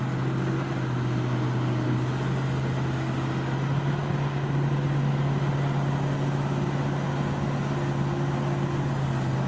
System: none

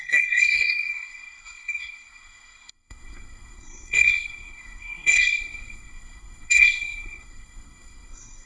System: codec, SNAC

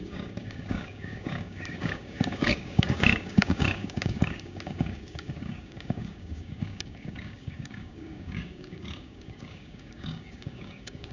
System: codec, DAC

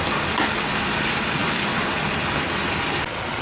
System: none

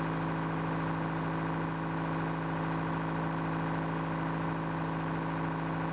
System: none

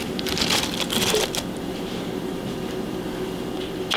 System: vocoder, BigVGAN v2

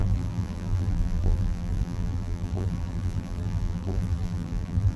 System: vocoder, BigVGAN v2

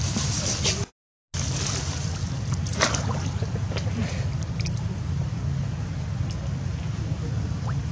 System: none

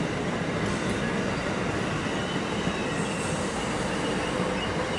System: none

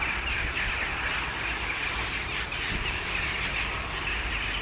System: none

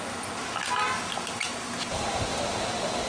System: none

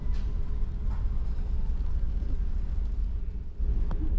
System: none